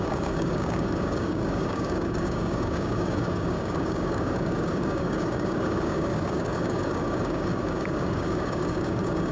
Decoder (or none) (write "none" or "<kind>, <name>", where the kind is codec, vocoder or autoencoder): codec, DAC